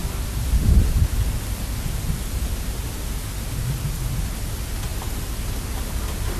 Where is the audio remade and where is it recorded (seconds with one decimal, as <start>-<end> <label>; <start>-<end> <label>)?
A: 0.0-6.4 recorded